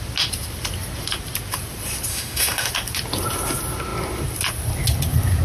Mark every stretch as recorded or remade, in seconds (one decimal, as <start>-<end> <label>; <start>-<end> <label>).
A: 0.0-2.1 recorded; 2.1-2.7 remade; 2.7-5.4 recorded